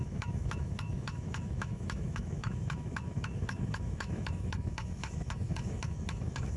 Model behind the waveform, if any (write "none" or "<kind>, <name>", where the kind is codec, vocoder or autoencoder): autoencoder, DAC-VAE